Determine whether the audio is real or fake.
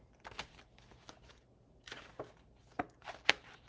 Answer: real